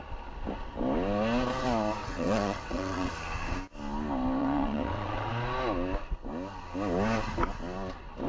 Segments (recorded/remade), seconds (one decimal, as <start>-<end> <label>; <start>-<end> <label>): 0.0-2.0 recorded; 2.0-3.1 remade; 3.1-4.4 recorded; 4.4-5.3 remade; 5.3-8.3 recorded